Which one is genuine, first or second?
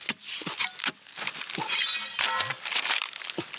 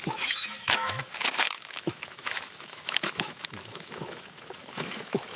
first